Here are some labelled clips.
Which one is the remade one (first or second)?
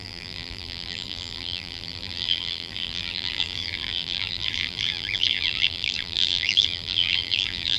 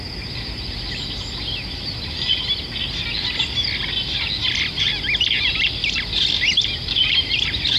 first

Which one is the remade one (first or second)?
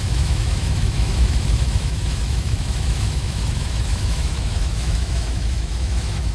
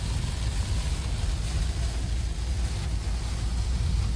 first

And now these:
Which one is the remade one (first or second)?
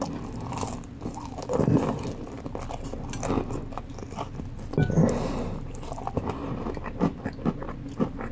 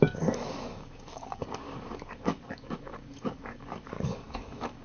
second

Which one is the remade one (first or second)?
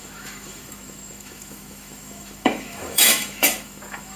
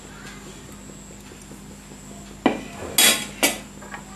first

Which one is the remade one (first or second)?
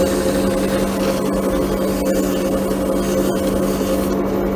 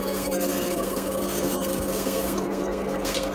second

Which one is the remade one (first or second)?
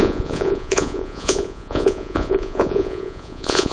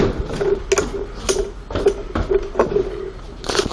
first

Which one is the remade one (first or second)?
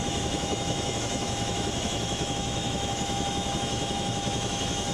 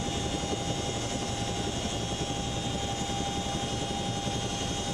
first